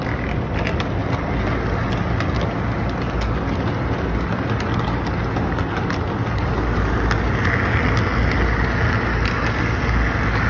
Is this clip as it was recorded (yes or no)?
yes